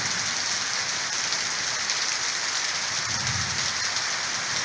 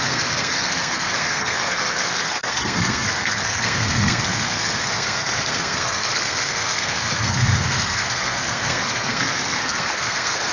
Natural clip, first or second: first